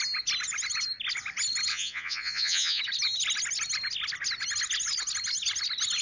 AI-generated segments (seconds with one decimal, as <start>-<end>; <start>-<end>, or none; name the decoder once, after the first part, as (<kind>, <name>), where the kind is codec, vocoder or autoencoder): 1.7-2.8 (vocoder, Vocos)